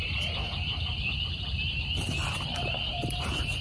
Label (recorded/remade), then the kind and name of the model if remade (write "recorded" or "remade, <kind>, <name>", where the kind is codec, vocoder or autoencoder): recorded